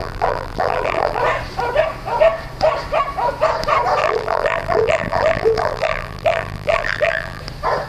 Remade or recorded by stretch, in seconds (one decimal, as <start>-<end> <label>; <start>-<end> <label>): 0.0-1.2 remade; 1.2-4.0 recorded; 4.0-7.4 remade; 7.4-7.9 recorded